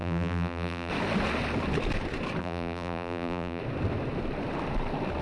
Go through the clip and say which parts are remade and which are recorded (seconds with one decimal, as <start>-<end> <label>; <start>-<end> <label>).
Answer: 0.0-0.9 remade; 0.9-2.4 recorded; 2.4-3.6 remade; 3.6-5.2 recorded